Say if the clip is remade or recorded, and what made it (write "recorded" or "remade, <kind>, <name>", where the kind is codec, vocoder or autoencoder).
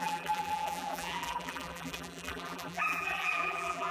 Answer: remade, vocoder, BigVGAN v2